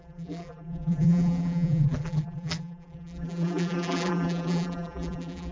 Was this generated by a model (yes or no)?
yes